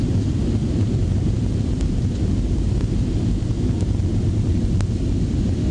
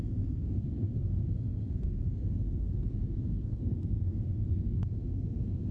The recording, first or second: first